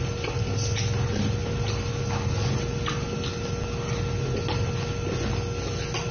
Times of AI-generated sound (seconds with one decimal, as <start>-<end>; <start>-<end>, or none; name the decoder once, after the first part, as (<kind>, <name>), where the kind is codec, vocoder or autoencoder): none